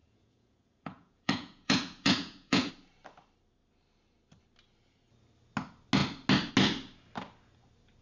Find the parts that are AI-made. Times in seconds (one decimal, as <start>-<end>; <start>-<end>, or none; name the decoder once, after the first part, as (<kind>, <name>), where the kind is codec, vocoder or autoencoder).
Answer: 0.0-2.7 (vocoder, Vocos)